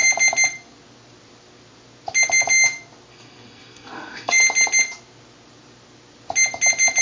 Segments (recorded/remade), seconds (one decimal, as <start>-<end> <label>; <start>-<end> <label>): 0.0-3.1 recorded; 3.1-4.4 remade; 4.4-7.0 recorded